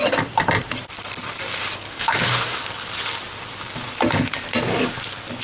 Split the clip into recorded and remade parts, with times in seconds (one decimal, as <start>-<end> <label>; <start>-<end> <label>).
0.0-1.9 recorded; 1.9-2.6 remade; 2.6-5.4 recorded